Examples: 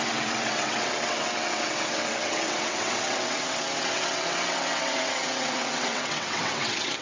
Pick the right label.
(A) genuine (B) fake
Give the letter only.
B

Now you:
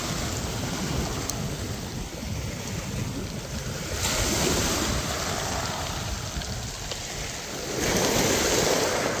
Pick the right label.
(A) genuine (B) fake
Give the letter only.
A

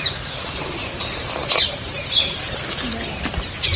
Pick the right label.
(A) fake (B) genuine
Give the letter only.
B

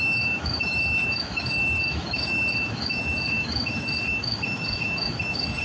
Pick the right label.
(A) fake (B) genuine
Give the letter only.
A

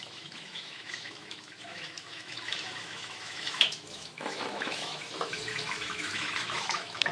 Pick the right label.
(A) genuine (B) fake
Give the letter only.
B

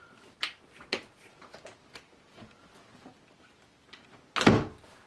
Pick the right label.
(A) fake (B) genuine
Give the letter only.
B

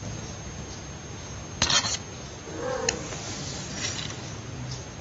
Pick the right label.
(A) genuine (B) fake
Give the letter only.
A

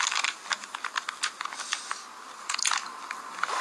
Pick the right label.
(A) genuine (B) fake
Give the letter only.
A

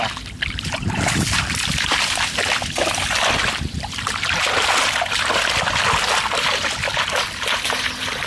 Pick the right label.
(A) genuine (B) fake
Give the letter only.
B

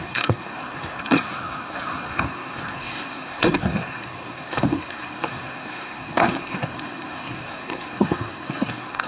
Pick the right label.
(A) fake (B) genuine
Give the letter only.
A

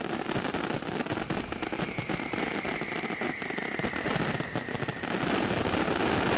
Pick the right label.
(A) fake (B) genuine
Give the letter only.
B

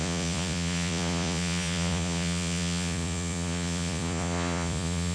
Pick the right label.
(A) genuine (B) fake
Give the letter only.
B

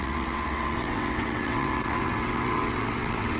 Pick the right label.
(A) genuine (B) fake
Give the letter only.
B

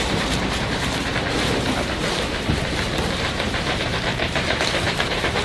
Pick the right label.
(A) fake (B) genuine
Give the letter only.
A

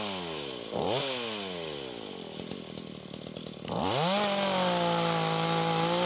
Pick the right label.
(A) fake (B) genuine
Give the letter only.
B